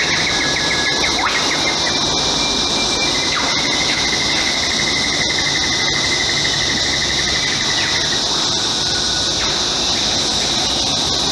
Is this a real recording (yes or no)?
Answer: yes